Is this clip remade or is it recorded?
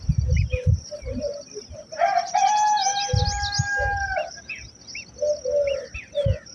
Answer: recorded